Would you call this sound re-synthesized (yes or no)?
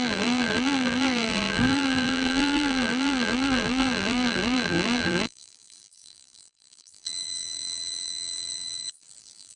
yes